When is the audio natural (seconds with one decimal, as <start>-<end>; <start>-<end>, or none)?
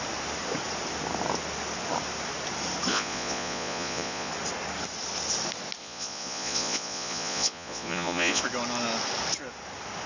0.0-2.9; 4.3-5.8; 8.4-10.1